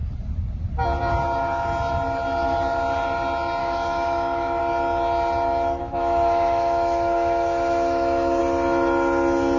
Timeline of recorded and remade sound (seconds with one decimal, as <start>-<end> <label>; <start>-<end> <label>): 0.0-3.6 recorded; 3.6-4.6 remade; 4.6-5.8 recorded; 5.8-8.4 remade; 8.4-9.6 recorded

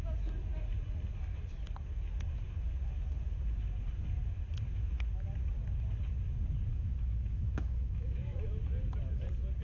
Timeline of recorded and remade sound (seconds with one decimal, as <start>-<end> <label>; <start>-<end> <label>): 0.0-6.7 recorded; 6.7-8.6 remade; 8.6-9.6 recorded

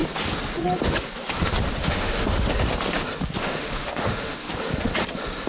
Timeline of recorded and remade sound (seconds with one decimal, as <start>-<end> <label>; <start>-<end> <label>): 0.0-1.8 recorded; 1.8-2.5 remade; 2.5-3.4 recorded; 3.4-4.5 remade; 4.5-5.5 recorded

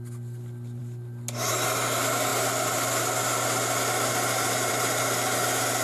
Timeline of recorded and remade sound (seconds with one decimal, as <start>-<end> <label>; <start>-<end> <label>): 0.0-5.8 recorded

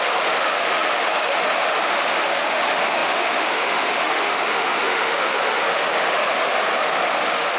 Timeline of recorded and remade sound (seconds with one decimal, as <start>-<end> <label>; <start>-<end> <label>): 0.0-6.2 remade; 6.2-6.8 recorded; 6.8-7.6 remade

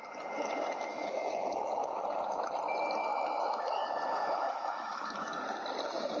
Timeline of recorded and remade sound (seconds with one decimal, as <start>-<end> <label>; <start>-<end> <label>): 0.0-0.9 recorded; 0.9-2.0 remade; 2.0-3.1 recorded; 3.1-5.3 remade; 5.3-6.2 recorded